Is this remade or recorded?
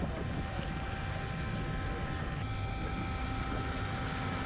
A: recorded